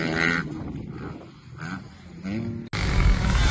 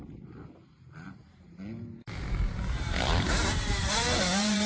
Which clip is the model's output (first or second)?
second